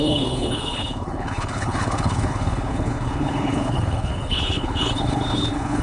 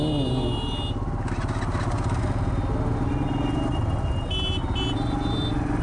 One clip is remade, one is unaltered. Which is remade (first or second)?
first